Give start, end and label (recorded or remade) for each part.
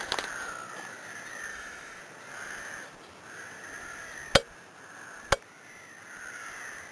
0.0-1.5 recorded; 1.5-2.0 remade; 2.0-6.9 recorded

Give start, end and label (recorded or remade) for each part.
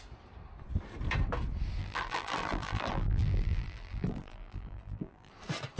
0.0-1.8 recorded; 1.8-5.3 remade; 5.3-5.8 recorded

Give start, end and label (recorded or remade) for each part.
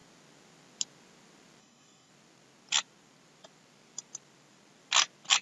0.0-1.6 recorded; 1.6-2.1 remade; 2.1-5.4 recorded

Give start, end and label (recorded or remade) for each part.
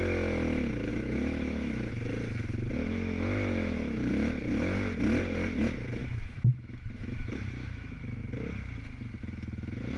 0.0-0.9 recorded; 0.9-1.9 remade; 1.9-2.8 recorded; 2.8-4.1 remade; 4.1-6.0 recorded; 6.0-8.2 remade; 8.2-10.0 recorded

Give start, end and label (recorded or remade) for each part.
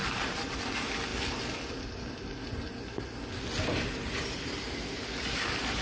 0.0-5.8 recorded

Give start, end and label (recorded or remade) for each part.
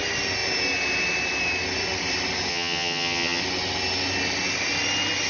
0.0-2.5 recorded; 2.5-3.4 remade; 3.4-5.3 recorded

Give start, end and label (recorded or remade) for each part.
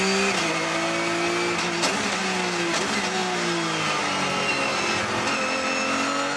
0.0-6.4 recorded